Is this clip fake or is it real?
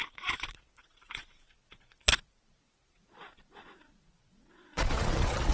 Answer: fake